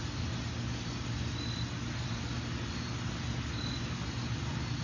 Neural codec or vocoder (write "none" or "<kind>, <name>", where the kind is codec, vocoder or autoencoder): none